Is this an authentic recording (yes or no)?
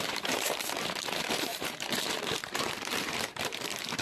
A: no